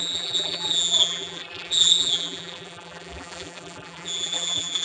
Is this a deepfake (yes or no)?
yes